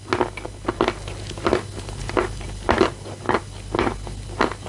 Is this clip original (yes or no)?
yes